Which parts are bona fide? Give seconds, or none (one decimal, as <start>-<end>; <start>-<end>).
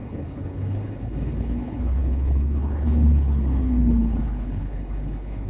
none